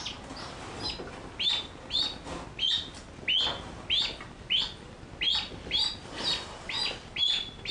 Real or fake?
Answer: real